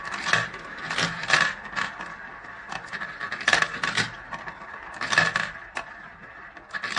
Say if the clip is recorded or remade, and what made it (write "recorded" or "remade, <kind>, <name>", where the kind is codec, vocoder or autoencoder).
recorded